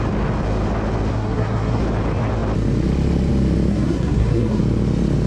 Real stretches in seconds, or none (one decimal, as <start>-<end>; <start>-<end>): 0.0-1.1; 1.8-3.7; 4.6-5.3